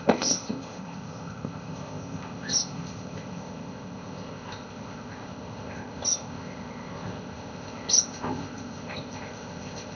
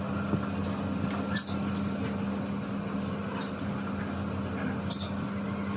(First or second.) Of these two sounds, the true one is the second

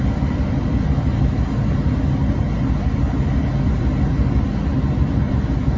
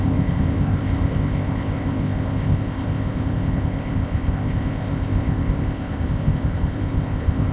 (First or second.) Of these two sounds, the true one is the first